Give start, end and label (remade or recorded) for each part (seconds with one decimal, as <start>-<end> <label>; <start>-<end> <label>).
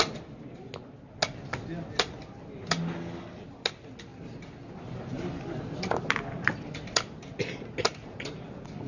0.0-8.9 recorded